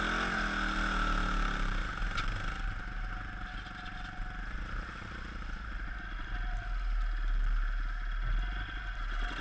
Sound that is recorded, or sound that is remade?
recorded